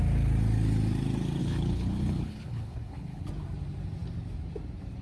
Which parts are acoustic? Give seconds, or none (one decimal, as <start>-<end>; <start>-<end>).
0.0-1.4; 3.3-5.0